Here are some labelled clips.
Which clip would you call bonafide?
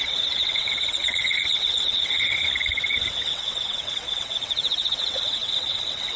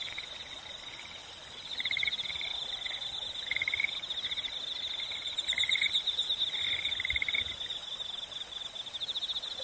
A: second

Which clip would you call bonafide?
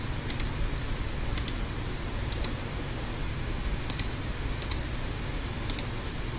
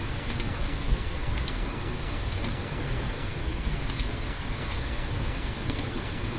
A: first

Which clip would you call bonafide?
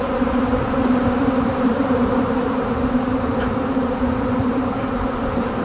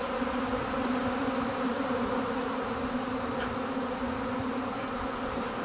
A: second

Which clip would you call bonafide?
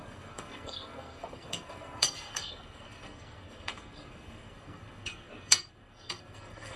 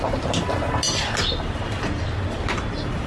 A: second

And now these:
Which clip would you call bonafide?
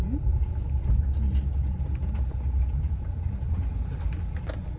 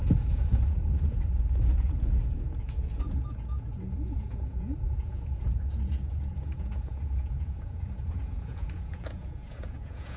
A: first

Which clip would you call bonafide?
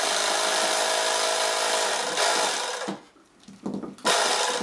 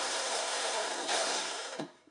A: first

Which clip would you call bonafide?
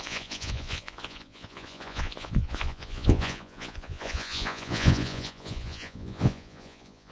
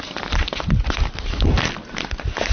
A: second